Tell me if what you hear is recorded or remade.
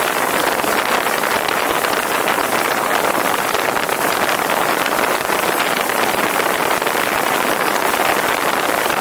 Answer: recorded